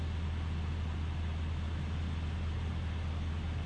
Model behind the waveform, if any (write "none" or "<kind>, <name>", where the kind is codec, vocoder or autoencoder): none